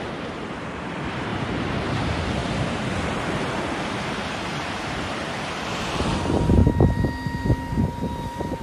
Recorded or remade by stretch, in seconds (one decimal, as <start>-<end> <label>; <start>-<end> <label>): 0.0-2.4 remade; 2.4-3.9 recorded; 3.9-6.6 remade; 6.6-7.7 recorded; 7.7-8.6 remade